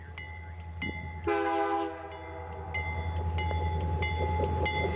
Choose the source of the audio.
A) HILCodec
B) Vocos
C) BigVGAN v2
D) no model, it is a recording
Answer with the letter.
D